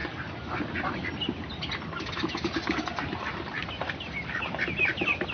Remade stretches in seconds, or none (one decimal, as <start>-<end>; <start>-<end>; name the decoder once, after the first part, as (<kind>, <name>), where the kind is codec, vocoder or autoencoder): 0.6-1.0 (vocoder, BigVGAN v2); 4.2-5.3